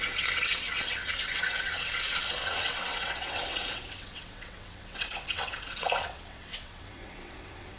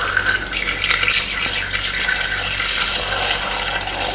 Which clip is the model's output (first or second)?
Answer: first